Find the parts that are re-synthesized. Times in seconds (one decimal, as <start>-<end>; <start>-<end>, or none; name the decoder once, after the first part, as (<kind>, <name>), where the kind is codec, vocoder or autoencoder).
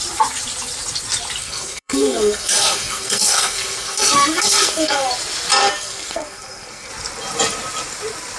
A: 1.4-5.1 (codec, SNAC); 5.6-6.9